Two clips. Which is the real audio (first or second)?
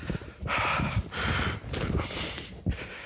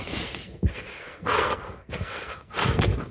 first